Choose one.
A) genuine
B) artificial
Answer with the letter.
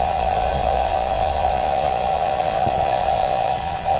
B